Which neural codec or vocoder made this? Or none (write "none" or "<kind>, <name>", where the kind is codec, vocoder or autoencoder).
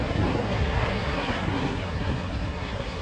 codec, SNAC